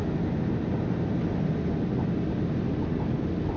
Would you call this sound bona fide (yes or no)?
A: yes